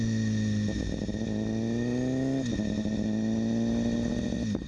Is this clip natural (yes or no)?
yes